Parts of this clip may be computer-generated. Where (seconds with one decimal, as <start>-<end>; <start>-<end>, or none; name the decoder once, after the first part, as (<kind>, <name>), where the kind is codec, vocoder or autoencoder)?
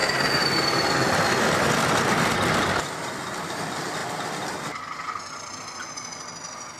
none